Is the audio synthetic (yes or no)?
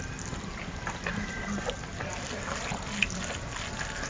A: no